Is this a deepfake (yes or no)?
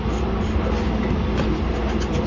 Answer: no